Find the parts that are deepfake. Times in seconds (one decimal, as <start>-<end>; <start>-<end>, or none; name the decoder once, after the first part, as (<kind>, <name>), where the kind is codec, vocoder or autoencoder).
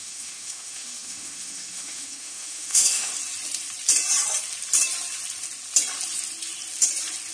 0.0-3.1 (autoencoder, DAC-VAE)